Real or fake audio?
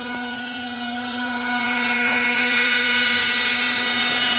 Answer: fake